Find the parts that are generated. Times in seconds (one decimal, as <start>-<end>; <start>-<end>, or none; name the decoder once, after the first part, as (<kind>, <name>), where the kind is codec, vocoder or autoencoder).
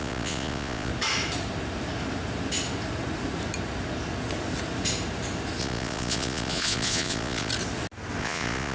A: 0.0-0.9 (vocoder, Vocos); 5.6-7.5; 8.2-8.7